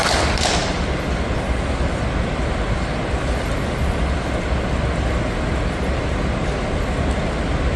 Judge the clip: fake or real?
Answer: real